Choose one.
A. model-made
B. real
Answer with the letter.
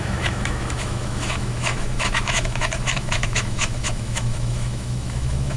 A